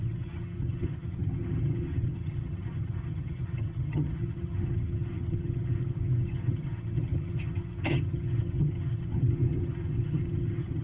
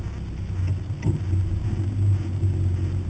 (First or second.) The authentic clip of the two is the second